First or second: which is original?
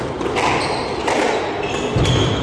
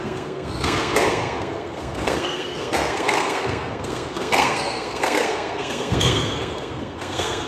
first